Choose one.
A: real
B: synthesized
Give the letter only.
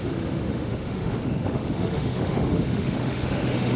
B